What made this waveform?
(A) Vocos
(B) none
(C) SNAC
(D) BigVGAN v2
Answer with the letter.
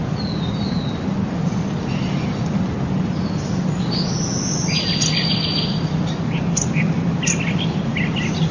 B